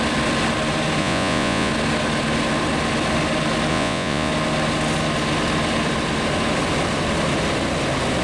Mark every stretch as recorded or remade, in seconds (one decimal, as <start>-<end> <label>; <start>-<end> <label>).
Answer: 0.0-1.0 recorded; 1.0-1.7 remade; 1.7-3.7 recorded; 3.7-4.3 remade; 4.3-8.2 recorded